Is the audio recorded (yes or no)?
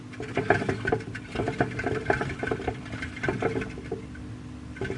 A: yes